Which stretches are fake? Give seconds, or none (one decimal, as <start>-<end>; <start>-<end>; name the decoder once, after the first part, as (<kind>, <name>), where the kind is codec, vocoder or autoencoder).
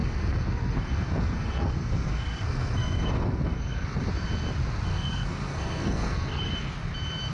0.0-4.1 (codec, SNAC); 4.9-6.5